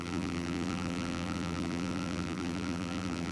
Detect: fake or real fake